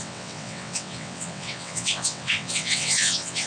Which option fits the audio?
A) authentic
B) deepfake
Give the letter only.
B